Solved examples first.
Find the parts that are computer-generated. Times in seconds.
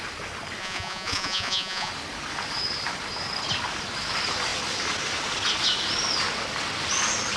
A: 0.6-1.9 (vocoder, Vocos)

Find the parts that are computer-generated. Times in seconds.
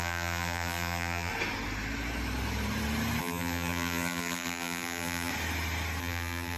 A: 0.0-1.3 (vocoder, BigVGAN v2); 3.2-5.3; 6.0-6.6